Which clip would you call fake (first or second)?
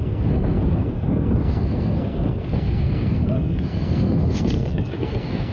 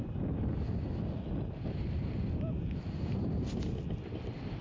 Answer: first